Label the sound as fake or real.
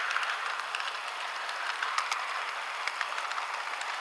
real